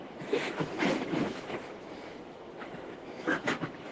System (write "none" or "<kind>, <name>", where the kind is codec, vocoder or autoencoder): autoencoder, DAC-VAE